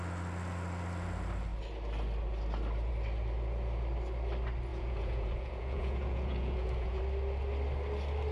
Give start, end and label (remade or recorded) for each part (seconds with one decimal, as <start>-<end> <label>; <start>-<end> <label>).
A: 0.0-4.7 recorded; 4.7-7.0 remade; 7.0-8.3 recorded